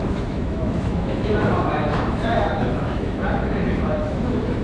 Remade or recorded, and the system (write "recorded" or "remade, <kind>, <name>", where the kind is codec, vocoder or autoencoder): remade, autoencoder, DAC-VAE